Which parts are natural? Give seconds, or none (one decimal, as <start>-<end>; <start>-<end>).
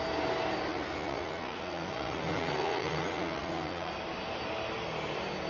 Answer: 0.0-0.7; 3.9-5.5